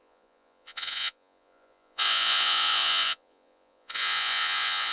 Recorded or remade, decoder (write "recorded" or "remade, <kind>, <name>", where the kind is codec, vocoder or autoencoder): remade, vocoder, Vocos